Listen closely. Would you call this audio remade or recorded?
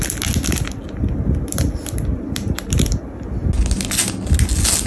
recorded